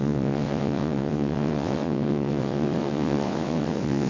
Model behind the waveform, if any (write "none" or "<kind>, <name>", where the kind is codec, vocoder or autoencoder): vocoder, WaveNeXt